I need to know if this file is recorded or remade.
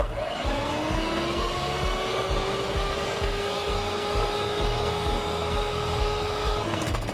remade